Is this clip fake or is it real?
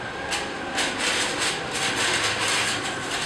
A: real